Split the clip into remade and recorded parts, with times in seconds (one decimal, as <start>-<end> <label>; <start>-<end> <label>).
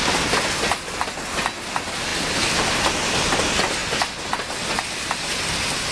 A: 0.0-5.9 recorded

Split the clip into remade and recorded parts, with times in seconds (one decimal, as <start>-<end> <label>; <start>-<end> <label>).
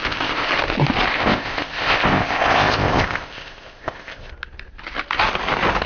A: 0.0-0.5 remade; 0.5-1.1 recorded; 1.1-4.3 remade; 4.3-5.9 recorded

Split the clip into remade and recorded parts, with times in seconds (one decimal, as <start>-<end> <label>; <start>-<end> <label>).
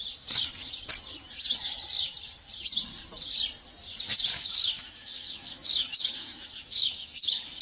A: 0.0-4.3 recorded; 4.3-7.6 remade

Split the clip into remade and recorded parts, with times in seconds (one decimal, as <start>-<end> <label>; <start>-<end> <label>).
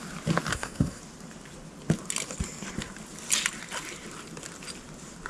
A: 0.0-0.5 recorded; 0.5-1.0 remade; 1.0-5.3 recorded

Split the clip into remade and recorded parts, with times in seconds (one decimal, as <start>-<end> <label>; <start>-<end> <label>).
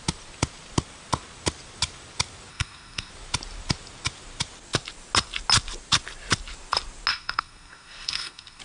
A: 0.0-2.5 recorded; 2.5-3.1 remade; 3.1-7.1 recorded; 7.1-8.6 remade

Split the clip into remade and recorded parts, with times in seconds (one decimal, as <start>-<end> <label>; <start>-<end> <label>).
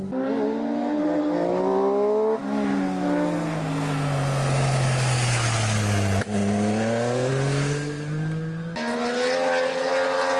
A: 0.0-10.4 recorded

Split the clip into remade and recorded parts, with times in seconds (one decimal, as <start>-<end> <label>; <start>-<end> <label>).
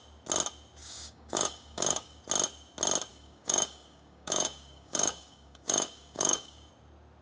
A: 0.0-0.8 recorded; 0.8-2.2 remade; 2.2-3.1 recorded; 3.1-6.7 remade; 6.7-7.2 recorded